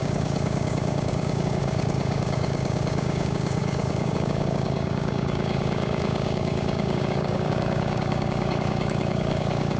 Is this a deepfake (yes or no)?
yes